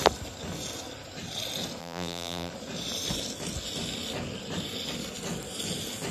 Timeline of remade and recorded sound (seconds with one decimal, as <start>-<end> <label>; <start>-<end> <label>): 0.0-1.8 recorded; 1.8-2.5 remade; 2.5-6.1 recorded